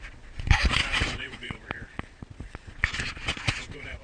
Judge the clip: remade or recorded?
remade